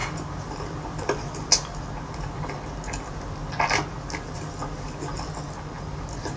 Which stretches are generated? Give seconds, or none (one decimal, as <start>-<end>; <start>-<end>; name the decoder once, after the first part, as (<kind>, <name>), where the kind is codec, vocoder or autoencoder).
none